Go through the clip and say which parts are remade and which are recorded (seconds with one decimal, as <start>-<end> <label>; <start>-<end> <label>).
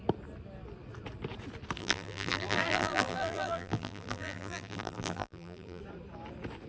0.0-1.8 recorded; 1.8-5.8 remade; 5.8-6.7 recorded